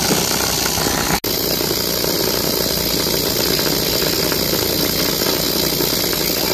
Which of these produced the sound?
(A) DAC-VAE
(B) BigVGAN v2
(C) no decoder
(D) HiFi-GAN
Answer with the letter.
C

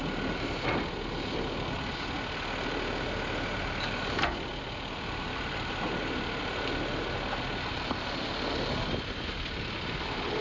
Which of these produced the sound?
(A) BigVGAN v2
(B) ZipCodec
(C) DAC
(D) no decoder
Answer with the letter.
D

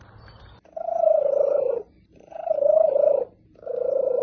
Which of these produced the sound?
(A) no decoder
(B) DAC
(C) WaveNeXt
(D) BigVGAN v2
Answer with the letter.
D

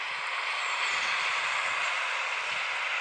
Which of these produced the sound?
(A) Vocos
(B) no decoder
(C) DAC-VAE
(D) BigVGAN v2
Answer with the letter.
B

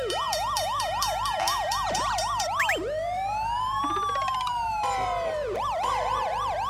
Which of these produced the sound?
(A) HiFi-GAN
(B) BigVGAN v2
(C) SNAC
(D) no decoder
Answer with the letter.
B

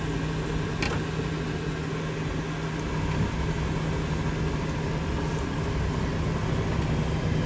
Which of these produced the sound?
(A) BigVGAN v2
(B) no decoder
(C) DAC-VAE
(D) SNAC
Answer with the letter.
B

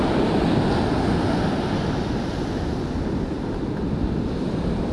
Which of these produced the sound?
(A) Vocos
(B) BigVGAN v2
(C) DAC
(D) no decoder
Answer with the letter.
D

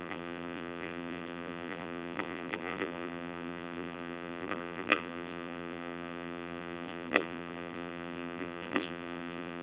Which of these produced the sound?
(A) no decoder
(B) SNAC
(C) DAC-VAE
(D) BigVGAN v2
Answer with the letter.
D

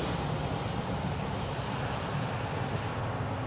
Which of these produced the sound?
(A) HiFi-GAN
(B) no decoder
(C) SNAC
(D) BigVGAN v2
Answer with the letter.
B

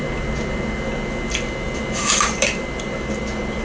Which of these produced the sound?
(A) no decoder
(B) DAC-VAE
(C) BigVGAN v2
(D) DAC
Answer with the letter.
A